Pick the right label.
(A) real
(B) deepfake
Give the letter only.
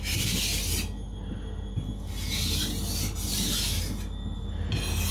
A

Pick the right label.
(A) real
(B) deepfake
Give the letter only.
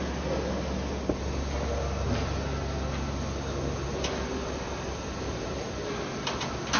A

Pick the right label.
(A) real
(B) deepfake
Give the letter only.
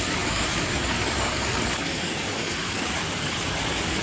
B